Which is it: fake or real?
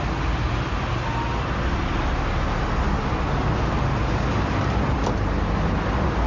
real